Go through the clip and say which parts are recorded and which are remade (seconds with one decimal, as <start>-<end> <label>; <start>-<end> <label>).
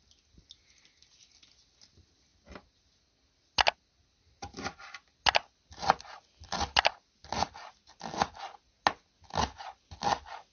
0.0-10.5 recorded